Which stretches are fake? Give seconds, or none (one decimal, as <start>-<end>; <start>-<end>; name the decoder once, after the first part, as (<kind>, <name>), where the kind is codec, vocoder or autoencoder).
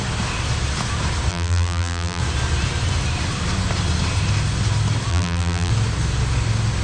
1.3-2.2 (vocoder, BigVGAN v2); 5.1-5.7